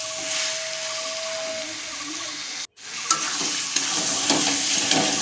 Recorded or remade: recorded